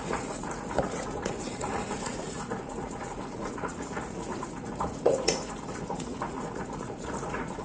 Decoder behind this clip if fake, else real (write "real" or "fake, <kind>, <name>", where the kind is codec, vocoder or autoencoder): fake, vocoder, Vocos